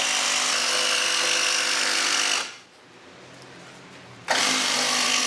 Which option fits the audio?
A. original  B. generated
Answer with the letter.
A